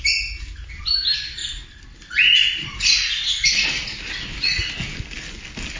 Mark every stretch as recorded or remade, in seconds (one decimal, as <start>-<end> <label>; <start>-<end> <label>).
0.0-5.8 recorded